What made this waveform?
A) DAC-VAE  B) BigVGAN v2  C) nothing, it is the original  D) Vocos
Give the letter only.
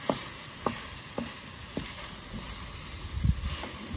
C